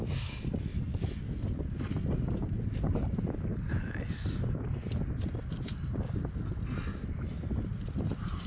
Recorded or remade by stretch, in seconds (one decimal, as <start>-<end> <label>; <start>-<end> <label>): 0.0-8.5 recorded